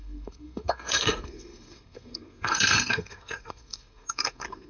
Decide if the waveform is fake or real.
fake